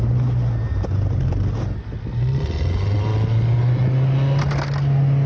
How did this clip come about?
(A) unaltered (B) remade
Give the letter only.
A